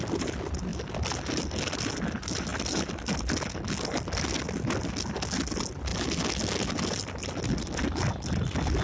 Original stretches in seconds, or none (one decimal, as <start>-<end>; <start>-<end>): 0.0-8.8